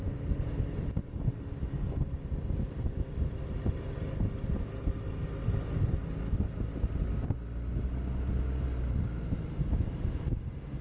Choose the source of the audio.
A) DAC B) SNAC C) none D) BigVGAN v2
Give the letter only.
C